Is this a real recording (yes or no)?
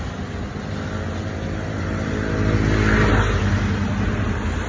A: yes